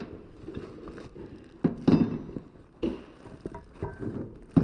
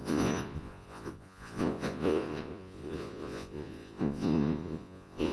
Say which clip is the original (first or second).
first